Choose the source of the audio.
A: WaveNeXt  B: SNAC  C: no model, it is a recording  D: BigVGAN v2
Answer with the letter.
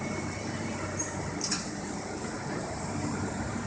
D